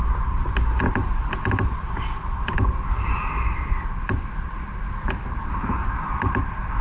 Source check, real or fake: real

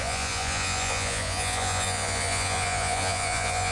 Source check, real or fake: fake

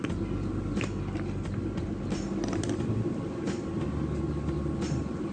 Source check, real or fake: real